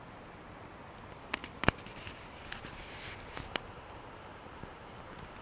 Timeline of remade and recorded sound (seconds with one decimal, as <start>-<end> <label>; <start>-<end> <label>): 0.0-4.3 recorded; 4.3-5.0 remade; 5.0-5.4 recorded